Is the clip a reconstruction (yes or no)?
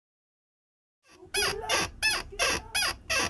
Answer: no